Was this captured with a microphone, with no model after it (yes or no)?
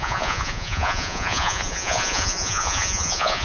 no